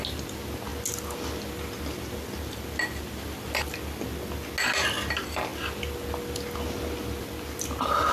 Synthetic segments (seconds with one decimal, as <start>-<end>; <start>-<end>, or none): none